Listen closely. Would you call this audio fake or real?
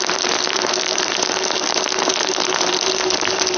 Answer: fake